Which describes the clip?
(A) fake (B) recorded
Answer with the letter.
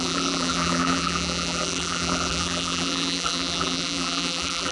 A